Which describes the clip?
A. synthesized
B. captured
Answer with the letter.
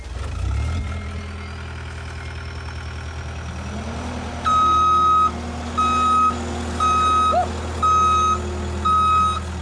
B